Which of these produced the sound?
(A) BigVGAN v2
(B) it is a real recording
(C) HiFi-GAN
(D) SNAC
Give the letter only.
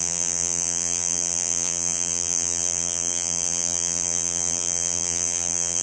A